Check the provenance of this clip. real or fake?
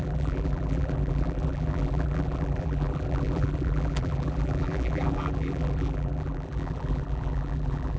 fake